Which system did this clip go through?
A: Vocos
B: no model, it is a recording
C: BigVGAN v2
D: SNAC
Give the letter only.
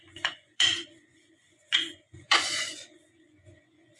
A